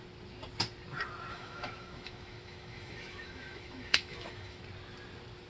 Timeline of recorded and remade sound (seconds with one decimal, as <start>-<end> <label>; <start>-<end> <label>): 0.0-1.3 recorded; 1.3-4.6 remade; 4.6-5.5 recorded